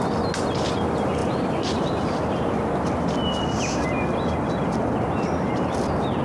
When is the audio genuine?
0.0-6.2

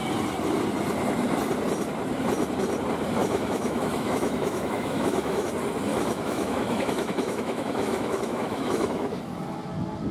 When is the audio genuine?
0.0-3.2; 5.5-5.9; 9.2-10.1

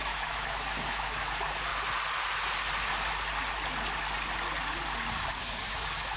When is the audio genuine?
1.7-5.4

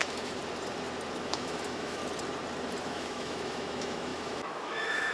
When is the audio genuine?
0.4-1.2; 2.0-2.8

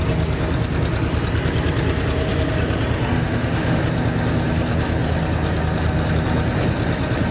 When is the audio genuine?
0.0-3.0; 3.8-7.3

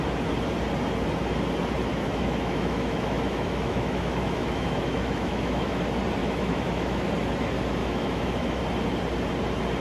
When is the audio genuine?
0.0-1.9; 5.8-6.2; 7.1-7.8; 8.6-9.8